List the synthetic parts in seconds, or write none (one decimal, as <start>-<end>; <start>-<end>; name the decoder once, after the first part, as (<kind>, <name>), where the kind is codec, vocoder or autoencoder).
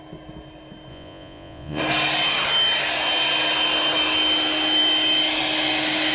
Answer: 0.9-1.8 (vocoder, Vocos)